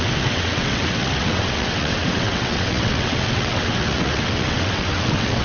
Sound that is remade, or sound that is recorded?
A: remade